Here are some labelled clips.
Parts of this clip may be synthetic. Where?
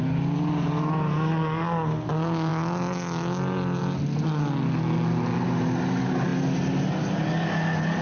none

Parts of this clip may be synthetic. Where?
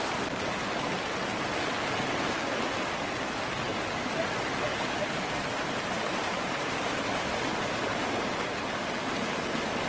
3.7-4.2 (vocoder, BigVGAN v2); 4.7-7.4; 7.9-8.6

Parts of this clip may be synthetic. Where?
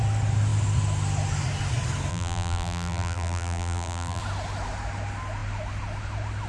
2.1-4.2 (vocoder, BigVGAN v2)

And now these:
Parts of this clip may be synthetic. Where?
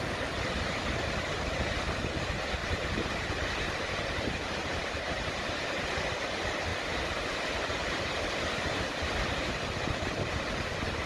2.6-5.5 (vocoder, BigVGAN v2); 6.7-8.2; 9.4-10.5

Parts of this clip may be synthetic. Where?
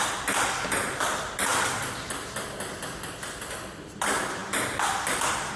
0.0-5.6 (vocoder, BigVGAN v2)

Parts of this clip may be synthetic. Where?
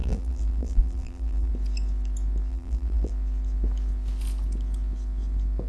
0.0-1.5 (vocoder, BigVGAN v2); 2.5-3.1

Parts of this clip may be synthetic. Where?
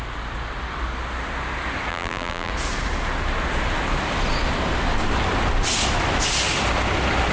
1.9-2.5 (vocoder, BigVGAN v2)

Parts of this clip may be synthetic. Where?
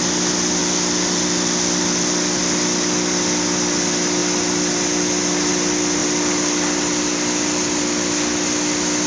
0.6-2.4 (vocoder, BigVGAN v2); 6.0-7.8